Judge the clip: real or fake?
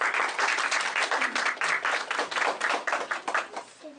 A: real